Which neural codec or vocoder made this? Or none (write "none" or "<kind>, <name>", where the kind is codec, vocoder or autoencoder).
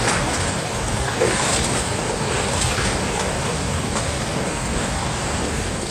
codec, DAC